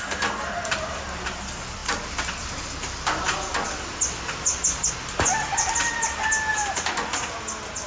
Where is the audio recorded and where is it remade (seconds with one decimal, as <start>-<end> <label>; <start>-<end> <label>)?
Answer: 0.0-7.9 recorded